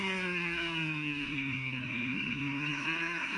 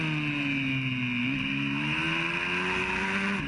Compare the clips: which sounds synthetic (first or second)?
first